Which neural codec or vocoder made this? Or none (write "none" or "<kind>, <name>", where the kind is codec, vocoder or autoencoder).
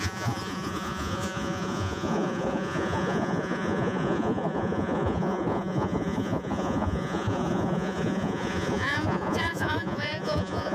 vocoder, Vocos